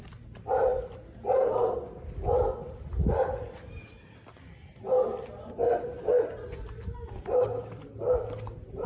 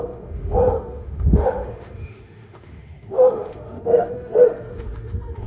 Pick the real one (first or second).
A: first